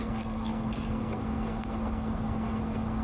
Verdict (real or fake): fake